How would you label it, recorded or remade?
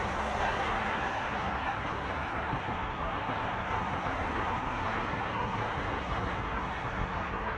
remade